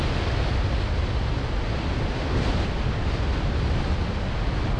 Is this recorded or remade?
recorded